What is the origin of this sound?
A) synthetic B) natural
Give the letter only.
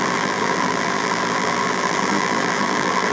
A